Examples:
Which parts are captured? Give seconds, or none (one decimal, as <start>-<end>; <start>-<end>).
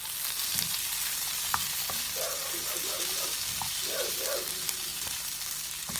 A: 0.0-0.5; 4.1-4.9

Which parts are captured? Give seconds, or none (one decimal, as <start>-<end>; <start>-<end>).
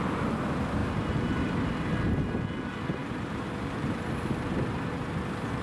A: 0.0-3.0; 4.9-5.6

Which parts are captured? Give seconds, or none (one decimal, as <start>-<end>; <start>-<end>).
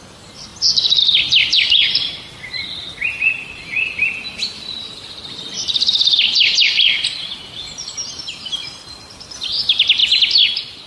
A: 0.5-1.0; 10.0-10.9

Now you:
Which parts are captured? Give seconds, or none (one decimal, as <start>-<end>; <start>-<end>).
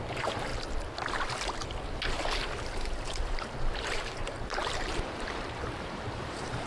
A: 0.5-2.6; 3.1-3.9